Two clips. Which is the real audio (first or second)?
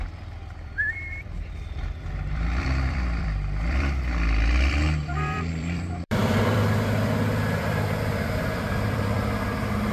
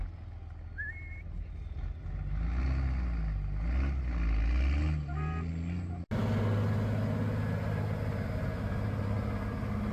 second